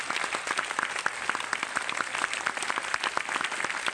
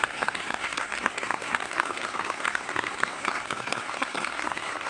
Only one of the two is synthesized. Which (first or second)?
second